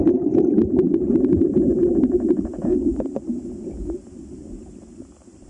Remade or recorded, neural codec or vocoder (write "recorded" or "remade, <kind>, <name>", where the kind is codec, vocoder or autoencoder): recorded